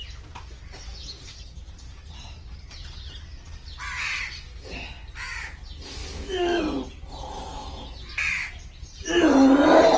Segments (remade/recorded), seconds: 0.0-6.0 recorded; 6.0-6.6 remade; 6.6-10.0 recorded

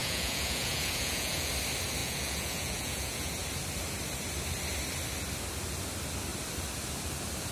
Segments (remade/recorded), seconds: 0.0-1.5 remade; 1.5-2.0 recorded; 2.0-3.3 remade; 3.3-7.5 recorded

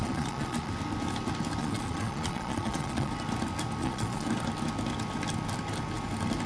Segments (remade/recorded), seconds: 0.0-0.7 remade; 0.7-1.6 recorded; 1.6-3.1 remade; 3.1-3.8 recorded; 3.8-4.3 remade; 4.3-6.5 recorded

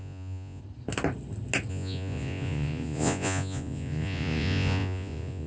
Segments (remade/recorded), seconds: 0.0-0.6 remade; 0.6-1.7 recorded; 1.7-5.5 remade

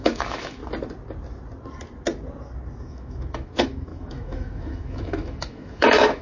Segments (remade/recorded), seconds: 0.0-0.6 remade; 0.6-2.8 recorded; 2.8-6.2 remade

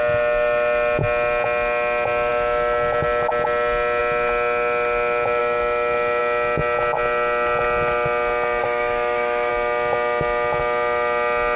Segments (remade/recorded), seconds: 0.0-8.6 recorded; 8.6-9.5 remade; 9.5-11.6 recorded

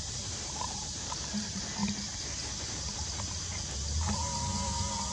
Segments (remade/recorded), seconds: 0.0-1.8 remade; 1.8-5.1 recorded